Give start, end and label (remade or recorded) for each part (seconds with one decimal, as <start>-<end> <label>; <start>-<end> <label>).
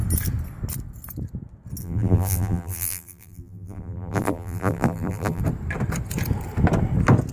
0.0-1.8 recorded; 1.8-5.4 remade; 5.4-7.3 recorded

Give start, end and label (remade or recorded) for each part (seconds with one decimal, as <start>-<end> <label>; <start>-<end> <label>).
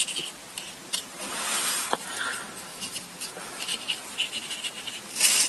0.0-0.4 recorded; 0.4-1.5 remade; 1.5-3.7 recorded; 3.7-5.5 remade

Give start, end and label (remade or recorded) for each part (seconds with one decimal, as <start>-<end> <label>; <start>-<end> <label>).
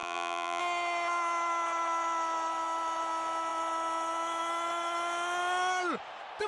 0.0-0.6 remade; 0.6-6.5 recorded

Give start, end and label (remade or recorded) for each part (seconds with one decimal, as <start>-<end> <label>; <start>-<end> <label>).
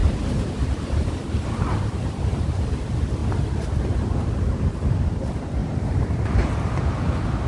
0.0-2.5 remade; 2.5-5.6 recorded; 5.6-7.5 remade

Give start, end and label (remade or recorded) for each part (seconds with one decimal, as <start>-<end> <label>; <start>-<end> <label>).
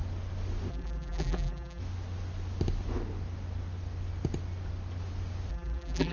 0.0-0.7 recorded; 0.7-1.8 remade; 1.8-5.5 recorded; 5.5-6.1 remade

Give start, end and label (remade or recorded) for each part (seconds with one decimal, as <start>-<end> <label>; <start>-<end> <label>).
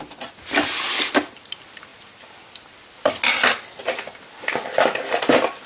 0.0-5.7 recorded